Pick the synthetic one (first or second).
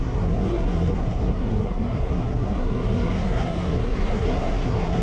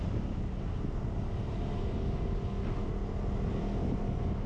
first